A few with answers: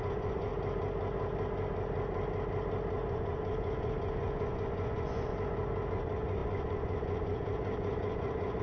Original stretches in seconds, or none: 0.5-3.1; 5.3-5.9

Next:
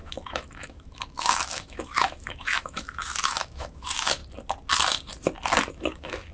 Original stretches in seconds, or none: 4.2-5.7

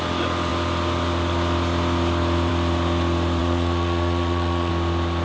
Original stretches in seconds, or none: 0.0-3.4; 4.7-5.2

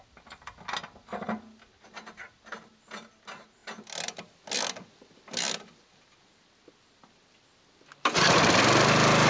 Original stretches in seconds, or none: 0.0-9.3

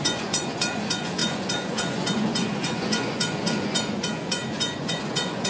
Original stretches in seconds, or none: none

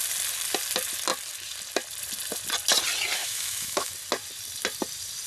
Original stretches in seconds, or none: 0.0-3.2; 3.9-5.3

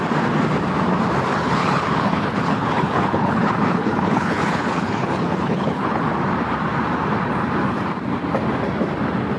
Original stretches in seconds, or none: 0.0-1.3; 6.1-9.4